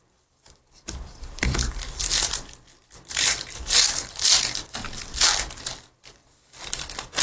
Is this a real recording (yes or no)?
no